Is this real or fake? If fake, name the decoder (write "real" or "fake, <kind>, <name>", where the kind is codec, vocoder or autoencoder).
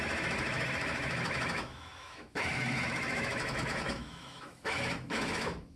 fake, autoencoder, DAC-VAE